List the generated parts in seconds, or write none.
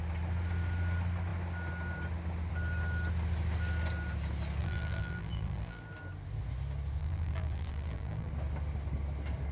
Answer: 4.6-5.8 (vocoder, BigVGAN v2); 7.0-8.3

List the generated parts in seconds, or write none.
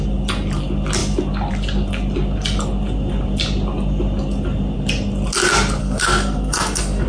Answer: 5.8-7.1 (codec, SNAC)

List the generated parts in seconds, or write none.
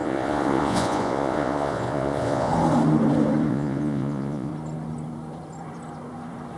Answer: 0.0-2.5 (vocoder, Vocos); 3.5-4.5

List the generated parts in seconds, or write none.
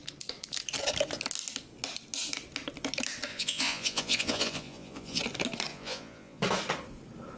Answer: 3.3-5.2 (vocoder, Vocos); 5.7-6.4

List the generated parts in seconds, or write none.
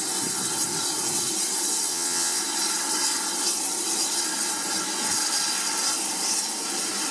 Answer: 1.9-2.4 (vocoder, WaveNeXt)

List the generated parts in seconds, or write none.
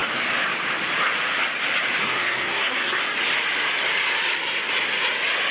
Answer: 2.0-3.0 (codec, SNAC)